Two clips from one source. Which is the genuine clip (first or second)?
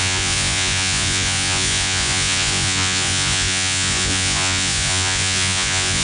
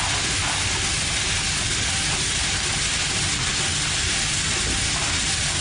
second